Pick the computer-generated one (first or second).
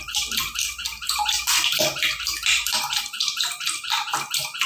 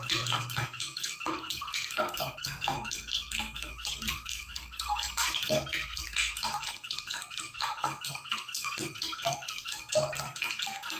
second